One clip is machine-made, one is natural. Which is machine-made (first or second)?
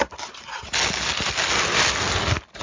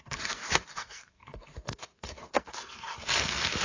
second